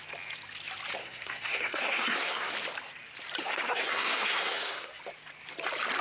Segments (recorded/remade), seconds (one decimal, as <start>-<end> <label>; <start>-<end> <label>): 0.0-1.0 recorded; 1.0-2.5 remade; 2.5-3.4 recorded; 3.4-5.0 remade; 5.0-6.0 recorded